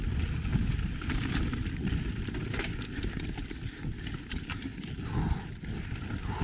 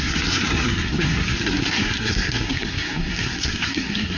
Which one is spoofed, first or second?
second